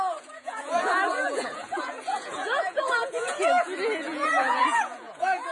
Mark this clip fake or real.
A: fake